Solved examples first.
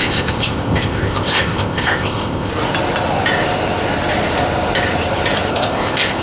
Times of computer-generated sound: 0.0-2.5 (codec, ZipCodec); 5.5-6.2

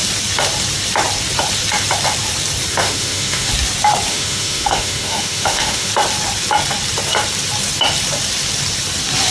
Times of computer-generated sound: 2.7-3.5 (autoencoder, DAC-VAE); 4.1-5.9

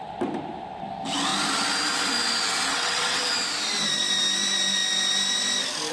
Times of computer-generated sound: 2.7-3.3 (vocoder, WaveNeXt)

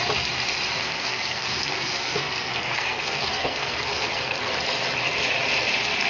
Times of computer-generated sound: 0.8-4.5 (codec, SNAC)